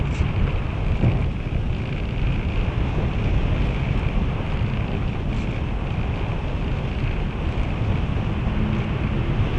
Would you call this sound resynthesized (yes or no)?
no